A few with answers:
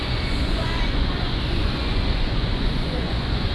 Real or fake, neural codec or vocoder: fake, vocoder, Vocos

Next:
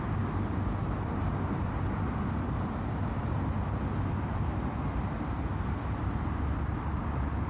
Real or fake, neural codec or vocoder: real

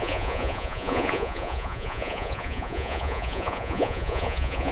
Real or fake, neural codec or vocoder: fake, vocoder, Vocos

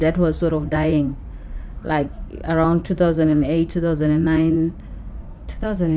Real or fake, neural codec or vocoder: fake, vocoder, Vocos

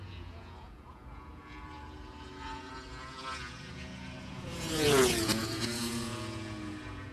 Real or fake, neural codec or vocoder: fake, vocoder, Vocos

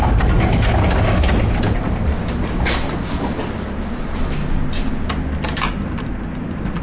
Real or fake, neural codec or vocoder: real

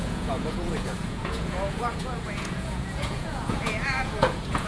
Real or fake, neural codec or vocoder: fake, vocoder, Vocos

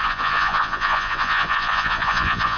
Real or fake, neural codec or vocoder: fake, vocoder, Vocos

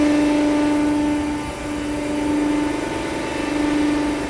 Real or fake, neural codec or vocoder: real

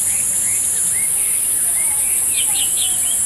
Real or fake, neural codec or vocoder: fake, vocoder, Vocos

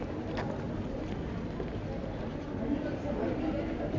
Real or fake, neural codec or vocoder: real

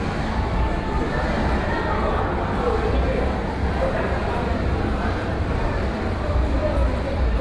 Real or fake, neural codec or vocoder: real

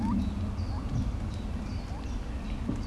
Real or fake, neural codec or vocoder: real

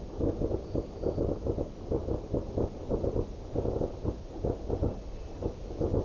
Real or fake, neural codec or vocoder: real